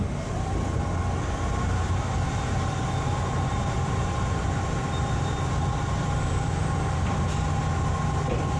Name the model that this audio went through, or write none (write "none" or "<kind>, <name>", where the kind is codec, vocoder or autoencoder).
none